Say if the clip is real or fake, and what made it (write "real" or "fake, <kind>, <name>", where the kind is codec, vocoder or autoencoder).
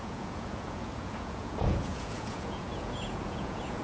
fake, vocoder, Vocos